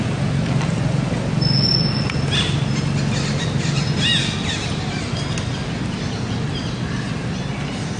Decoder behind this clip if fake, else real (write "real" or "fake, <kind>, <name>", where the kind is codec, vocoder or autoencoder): real